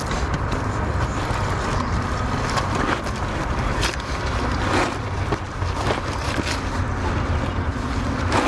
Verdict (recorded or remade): recorded